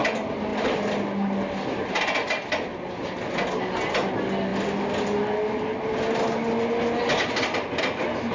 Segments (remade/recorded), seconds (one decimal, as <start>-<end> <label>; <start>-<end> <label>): 0.0-8.3 recorded